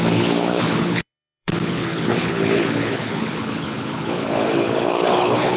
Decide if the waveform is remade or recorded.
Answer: remade